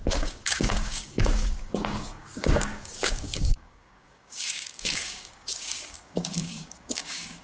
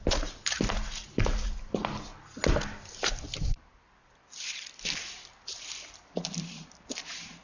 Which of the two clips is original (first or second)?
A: second